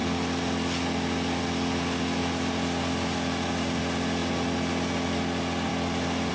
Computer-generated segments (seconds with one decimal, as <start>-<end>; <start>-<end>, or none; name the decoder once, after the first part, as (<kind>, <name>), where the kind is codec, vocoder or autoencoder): none